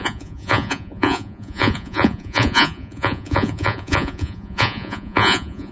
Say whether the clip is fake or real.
fake